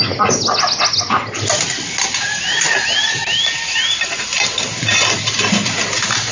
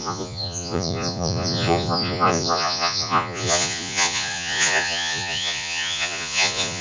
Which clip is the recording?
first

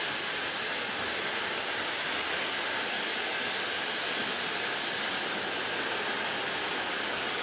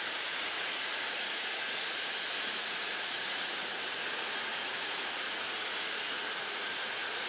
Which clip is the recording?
first